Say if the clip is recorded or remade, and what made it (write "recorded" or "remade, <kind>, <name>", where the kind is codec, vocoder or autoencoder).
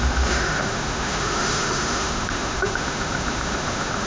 remade, autoencoder, DAC-VAE